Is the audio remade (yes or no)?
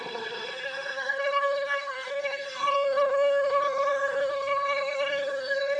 yes